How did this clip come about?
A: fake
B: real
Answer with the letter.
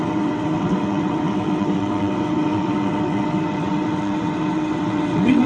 A